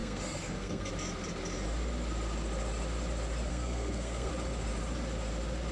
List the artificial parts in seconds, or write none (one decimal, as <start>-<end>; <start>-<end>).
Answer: 0.0-0.9; 3.5-4.3